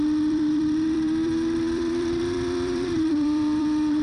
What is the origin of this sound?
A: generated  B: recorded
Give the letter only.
A